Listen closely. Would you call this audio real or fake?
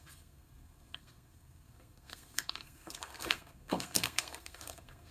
fake